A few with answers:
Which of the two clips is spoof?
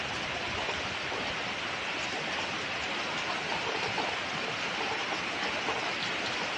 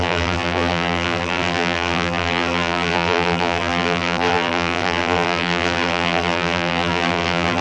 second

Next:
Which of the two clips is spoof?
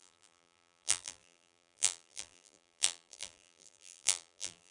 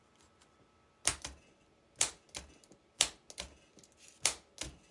first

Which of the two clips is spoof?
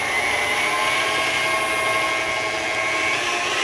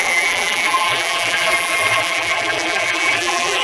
second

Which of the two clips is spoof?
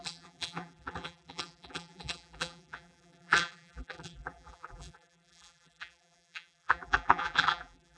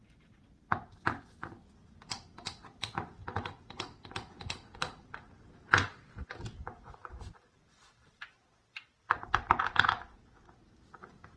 first